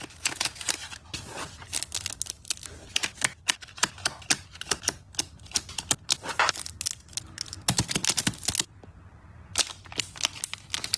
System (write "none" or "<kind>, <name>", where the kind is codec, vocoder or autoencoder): none